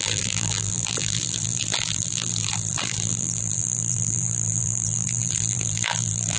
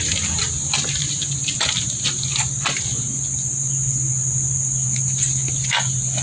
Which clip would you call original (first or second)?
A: second